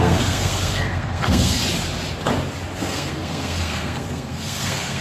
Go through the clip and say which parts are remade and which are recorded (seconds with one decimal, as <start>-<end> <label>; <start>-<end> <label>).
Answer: 0.0-1.6 remade; 1.6-2.8 recorded; 2.8-5.0 remade

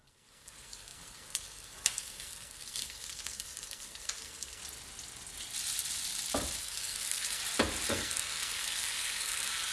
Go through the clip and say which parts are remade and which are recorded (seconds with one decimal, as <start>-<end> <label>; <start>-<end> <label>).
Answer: 0.0-4.6 remade; 4.6-6.6 recorded; 6.6-7.4 remade; 7.4-7.9 recorded; 7.9-9.7 remade

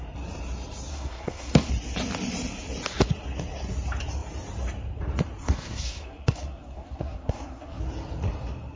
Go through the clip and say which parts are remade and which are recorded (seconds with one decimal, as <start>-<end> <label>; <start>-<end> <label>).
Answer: 0.0-0.9 recorded; 0.9-1.7 remade; 1.7-5.4 recorded; 5.4-7.8 remade; 7.8-8.8 recorded

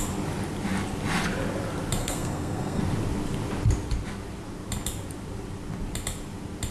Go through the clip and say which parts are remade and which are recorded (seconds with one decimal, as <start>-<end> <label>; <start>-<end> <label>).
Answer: 0.0-2.0 recorded; 2.0-2.8 remade; 2.8-6.7 recorded

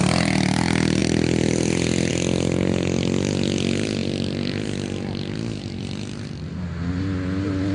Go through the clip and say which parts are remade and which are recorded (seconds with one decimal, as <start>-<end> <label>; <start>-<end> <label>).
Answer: 0.0-7.7 recorded

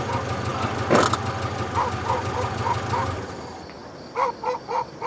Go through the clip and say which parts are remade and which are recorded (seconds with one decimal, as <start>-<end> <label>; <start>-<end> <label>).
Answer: 0.0-5.1 recorded

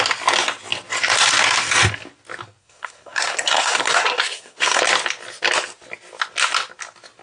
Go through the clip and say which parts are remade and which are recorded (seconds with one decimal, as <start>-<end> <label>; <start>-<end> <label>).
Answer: 0.0-2.6 recorded; 2.6-4.8 remade; 4.8-7.2 recorded

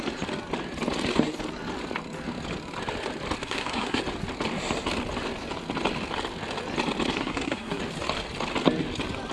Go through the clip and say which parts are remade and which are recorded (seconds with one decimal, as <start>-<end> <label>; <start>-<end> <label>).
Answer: 0.0-3.4 recorded; 3.4-4.0 remade; 4.0-7.2 recorded; 7.2-7.8 remade; 7.8-9.3 recorded